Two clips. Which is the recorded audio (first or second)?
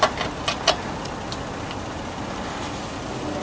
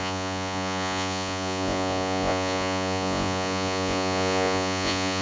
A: first